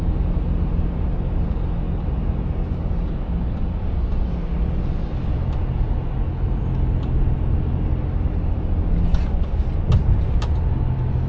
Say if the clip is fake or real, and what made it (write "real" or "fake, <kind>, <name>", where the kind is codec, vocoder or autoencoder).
real